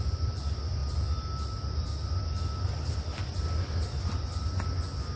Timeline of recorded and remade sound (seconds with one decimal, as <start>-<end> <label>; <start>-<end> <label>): 0.0-5.2 recorded